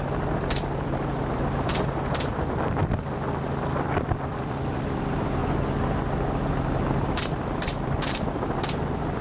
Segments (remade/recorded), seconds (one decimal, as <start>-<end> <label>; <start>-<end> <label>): 0.0-5.4 remade; 5.4-7.1 recorded; 7.1-9.2 remade